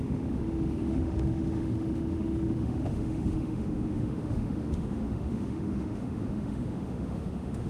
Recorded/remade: remade